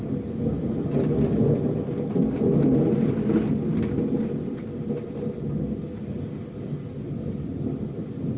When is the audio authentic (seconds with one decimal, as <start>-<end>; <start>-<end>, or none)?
0.0-8.4